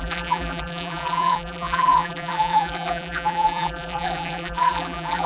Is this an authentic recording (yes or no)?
no